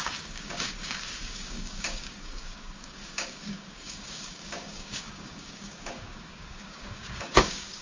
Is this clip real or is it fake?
fake